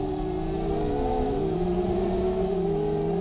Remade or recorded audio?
recorded